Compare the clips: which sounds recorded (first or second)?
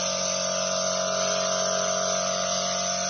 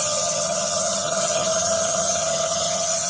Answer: first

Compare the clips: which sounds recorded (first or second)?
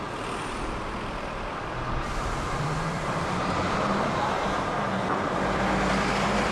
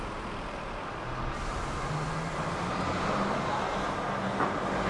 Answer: second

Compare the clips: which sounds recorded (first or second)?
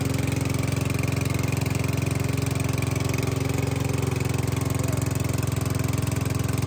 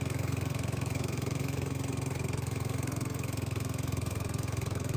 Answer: first